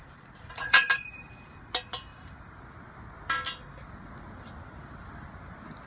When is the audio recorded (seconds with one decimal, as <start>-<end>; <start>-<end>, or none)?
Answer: 0.9-5.9